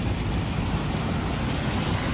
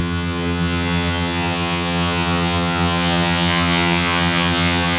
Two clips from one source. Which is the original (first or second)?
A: first